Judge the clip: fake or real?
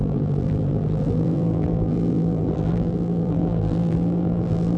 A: fake